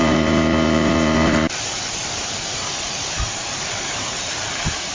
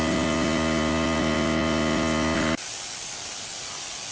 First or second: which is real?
second